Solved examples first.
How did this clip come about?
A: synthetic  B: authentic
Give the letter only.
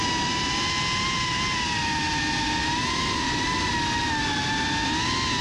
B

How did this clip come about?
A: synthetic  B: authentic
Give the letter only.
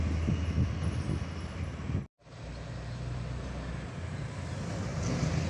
B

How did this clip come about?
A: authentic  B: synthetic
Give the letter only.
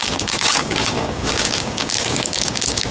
B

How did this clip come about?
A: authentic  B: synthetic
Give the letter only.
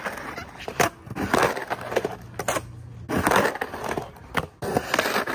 A